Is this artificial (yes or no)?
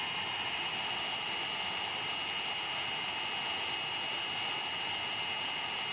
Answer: no